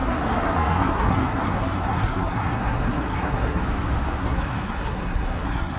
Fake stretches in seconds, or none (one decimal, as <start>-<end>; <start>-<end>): 0.0-3.6; 4.2-5.8